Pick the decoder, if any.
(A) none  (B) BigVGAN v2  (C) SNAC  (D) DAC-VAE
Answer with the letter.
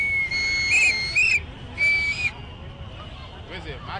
A